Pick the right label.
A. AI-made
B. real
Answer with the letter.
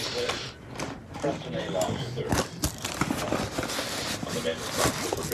A